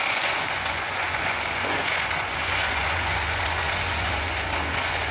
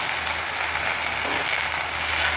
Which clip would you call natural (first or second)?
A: second